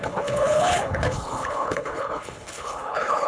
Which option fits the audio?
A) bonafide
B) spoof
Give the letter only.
B